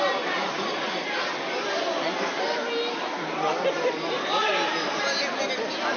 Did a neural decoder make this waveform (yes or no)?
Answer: no